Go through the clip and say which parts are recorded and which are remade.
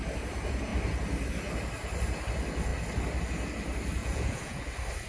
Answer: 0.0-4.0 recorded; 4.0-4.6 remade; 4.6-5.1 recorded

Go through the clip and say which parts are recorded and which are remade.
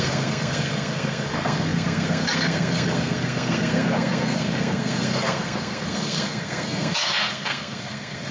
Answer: 0.0-8.3 remade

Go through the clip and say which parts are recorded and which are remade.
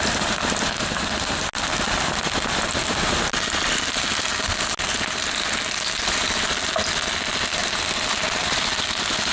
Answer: 0.0-9.3 recorded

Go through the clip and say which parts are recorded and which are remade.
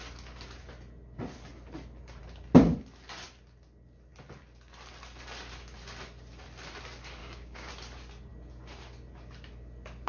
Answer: 0.0-7.2 recorded; 7.2-7.7 remade; 7.7-10.1 recorded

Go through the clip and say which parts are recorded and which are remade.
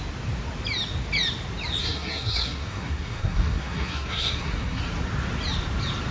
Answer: 0.0-1.8 recorded; 1.8-4.8 remade; 4.8-6.1 recorded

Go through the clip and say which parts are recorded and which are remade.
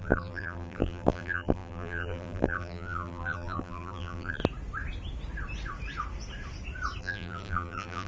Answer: 0.0-4.4 remade; 4.4-7.0 recorded; 7.0-8.1 remade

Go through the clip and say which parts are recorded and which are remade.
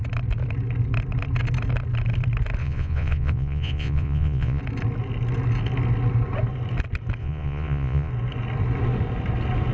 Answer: 0.0-2.6 recorded; 2.6-4.6 remade; 4.6-7.2 recorded; 7.2-8.1 remade; 8.1-9.7 recorded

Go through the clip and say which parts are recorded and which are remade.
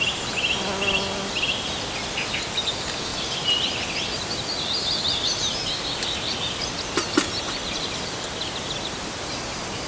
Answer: 0.0-9.9 recorded